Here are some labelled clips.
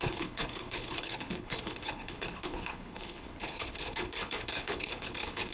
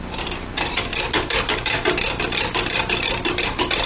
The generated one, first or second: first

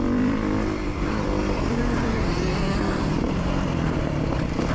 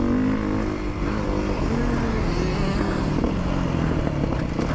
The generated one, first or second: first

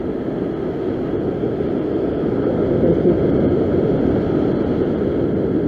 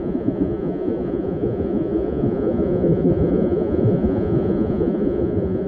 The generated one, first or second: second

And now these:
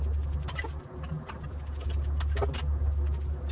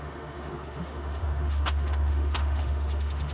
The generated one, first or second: second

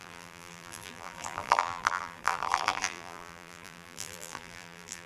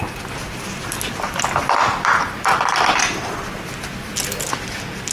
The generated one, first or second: first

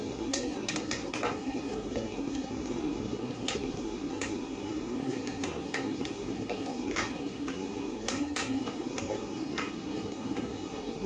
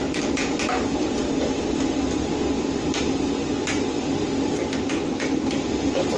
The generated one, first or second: first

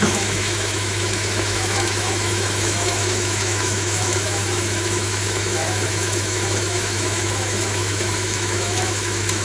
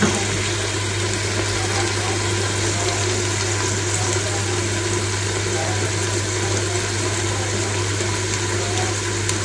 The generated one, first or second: first